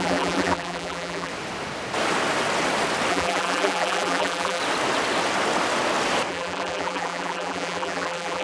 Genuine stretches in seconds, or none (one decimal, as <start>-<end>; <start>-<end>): 1.3-3.1; 4.6-6.3